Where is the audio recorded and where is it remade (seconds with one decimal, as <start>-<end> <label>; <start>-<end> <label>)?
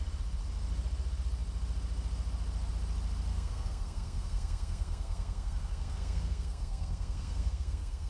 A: 0.0-3.3 recorded; 3.3-8.1 remade